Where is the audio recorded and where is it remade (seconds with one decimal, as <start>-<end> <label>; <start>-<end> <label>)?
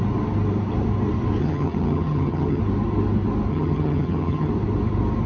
0.0-1.4 recorded; 1.4-2.6 remade; 2.6-3.5 recorded; 3.5-4.5 remade; 4.5-5.3 recorded